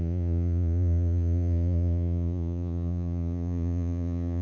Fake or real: fake